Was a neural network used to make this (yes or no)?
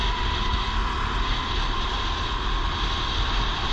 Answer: no